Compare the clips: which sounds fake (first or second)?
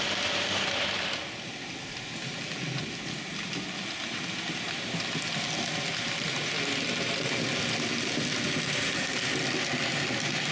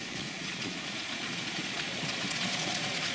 second